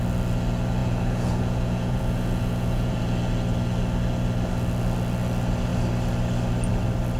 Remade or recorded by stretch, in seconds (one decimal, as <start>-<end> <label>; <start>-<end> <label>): 0.0-0.8 recorded; 0.8-3.0 remade; 3.0-7.2 recorded